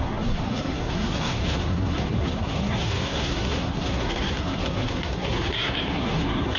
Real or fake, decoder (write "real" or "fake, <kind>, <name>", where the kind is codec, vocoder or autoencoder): fake, codec, SNAC